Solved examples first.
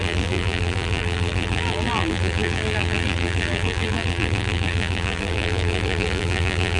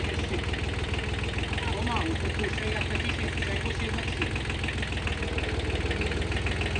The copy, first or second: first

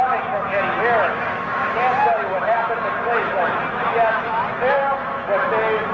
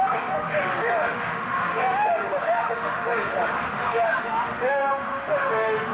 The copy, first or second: second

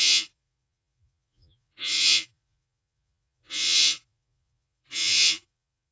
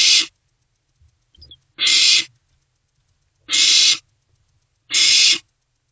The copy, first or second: first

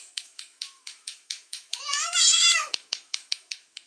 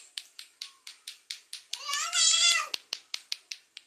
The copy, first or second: first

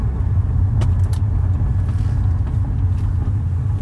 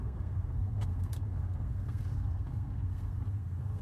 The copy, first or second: second